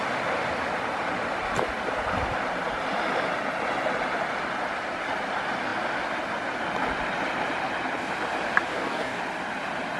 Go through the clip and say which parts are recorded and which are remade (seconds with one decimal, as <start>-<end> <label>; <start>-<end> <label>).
0.0-8.7 recorded; 8.7-9.2 remade; 9.2-10.0 recorded